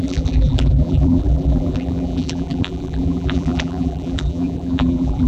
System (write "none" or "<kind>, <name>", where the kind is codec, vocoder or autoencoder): vocoder, BigVGAN v2